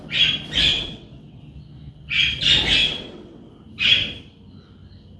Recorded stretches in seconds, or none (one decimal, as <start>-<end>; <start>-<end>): 0.0-0.7; 1.4-2.8; 3.5-5.2